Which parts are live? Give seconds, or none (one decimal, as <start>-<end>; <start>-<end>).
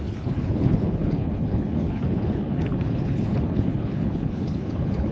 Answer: none